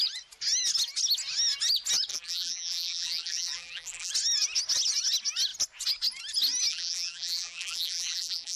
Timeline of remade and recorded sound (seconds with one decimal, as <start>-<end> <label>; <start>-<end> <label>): 0.0-2.1 recorded; 2.1-4.1 remade; 4.1-6.7 recorded; 6.7-8.6 remade